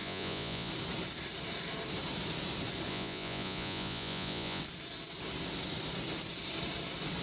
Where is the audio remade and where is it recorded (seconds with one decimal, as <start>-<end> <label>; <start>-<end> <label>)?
0.0-0.7 remade; 0.7-2.9 recorded; 2.9-4.6 remade; 4.6-7.2 recorded

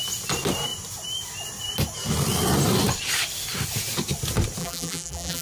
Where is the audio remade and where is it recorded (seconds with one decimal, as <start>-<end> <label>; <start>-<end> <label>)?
0.0-4.6 recorded; 4.6-5.4 remade

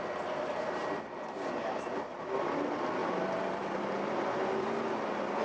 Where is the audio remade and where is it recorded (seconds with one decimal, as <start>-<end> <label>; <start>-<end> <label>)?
0.0-0.8 recorded; 0.8-1.7 remade; 1.7-3.0 recorded; 3.0-4.7 remade; 4.7-5.4 recorded

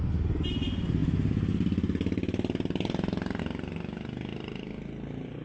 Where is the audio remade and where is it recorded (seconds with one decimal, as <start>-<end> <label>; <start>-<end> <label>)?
0.0-5.4 recorded

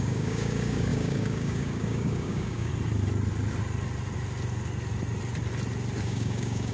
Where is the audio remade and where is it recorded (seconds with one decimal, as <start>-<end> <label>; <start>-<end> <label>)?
0.0-2.7 remade; 2.7-6.0 recorded; 6.0-6.7 remade

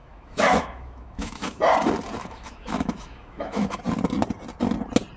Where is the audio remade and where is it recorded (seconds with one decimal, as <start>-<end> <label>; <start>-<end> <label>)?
0.0-1.6 remade; 1.6-2.2 recorded; 2.2-3.8 remade; 3.8-5.2 recorded

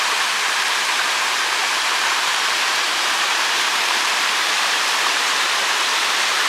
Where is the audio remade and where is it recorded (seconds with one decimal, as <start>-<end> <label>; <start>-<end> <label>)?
0.0-1.6 recorded; 1.6-5.5 remade; 5.5-6.5 recorded

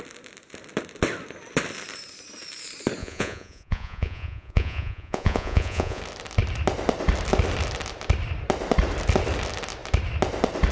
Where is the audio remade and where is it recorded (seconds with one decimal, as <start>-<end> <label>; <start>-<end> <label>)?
0.0-3.0 recorded; 3.0-6.0 remade; 6.0-10.7 recorded